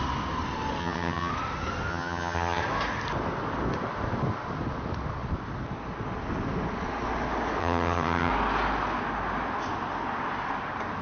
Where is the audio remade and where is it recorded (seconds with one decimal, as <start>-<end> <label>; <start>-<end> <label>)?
0.0-0.8 recorded; 0.8-1.3 remade; 1.3-1.9 recorded; 1.9-2.6 remade; 2.6-7.6 recorded; 7.6-8.3 remade; 8.3-11.0 recorded